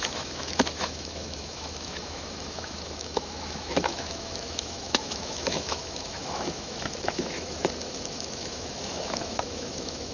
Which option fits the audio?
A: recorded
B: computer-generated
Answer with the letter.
B